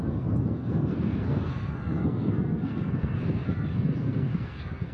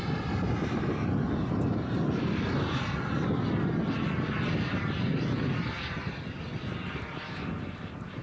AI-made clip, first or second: first